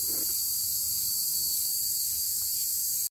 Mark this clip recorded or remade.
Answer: recorded